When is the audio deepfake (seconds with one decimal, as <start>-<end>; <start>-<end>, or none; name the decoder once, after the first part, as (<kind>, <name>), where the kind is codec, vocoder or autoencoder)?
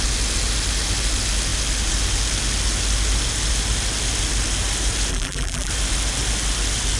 5.1-5.7 (vocoder, BigVGAN v2)